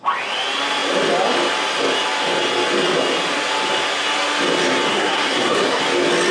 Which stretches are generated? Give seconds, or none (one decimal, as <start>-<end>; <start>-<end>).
4.9-5.8